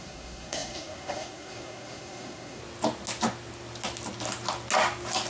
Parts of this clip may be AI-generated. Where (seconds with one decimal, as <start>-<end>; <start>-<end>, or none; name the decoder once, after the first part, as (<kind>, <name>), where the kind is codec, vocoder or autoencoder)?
0.0-2.6 (codec, SNAC)